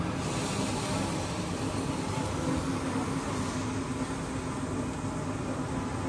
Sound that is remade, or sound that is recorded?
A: recorded